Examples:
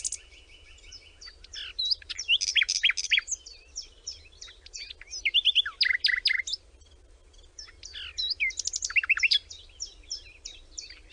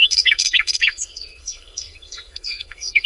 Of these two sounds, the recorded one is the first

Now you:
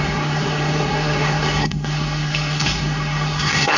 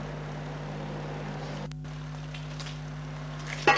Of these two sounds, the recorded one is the second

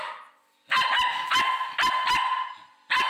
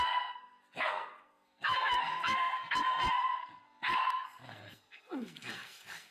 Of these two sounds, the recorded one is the first